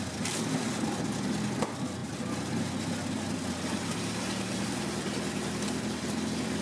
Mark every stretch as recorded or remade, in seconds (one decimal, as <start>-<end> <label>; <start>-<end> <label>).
0.0-6.6 recorded